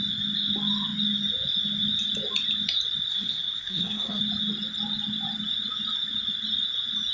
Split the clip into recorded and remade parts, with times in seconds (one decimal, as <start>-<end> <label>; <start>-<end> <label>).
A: 0.0-3.1 recorded; 3.1-4.2 remade; 4.2-7.1 recorded